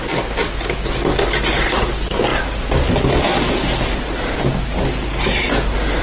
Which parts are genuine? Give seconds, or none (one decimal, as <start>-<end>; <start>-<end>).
0.0-6.0